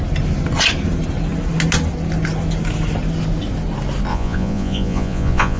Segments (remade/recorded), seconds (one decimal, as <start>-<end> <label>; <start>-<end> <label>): 0.0-4.1 recorded; 4.1-5.6 remade